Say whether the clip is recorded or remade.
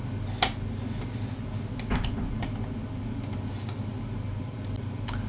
recorded